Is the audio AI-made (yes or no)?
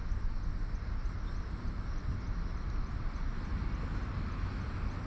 no